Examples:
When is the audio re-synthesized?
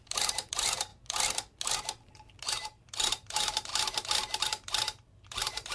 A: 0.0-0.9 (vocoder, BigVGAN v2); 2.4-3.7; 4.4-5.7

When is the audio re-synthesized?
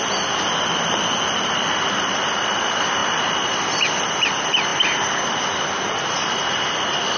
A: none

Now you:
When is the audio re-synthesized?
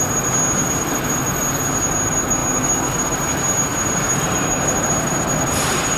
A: 3.7-5.1 (vocoder, BigVGAN v2)